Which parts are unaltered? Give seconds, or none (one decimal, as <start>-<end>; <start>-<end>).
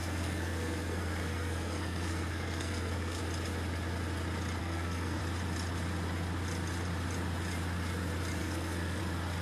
3.2-4.6; 5.2-8.4; 9.0-9.4